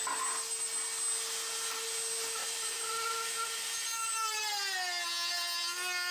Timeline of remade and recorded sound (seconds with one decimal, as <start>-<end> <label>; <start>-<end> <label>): 0.0-2.4 recorded; 2.4-4.4 remade; 4.4-6.1 recorded